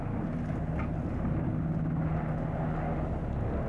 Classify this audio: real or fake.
real